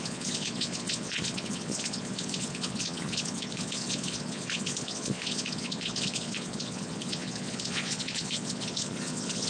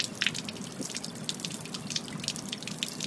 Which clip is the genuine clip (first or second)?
second